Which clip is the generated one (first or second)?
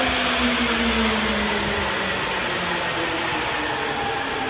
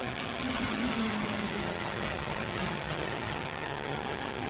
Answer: second